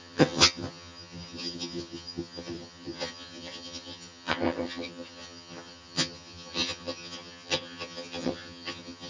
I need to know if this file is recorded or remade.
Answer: remade